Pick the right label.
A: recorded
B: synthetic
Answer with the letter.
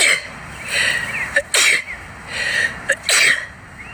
A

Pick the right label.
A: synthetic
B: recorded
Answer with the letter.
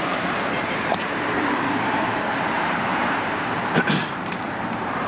A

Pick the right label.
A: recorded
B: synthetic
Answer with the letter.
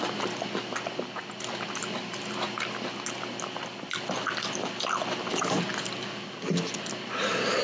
A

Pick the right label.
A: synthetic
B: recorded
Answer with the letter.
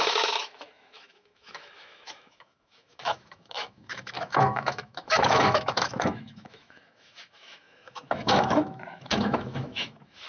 A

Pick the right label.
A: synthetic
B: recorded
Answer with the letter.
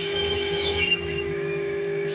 A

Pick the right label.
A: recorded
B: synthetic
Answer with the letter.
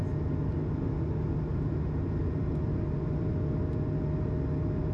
A